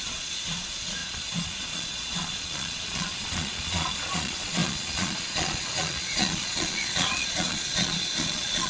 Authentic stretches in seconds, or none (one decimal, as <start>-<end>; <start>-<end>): none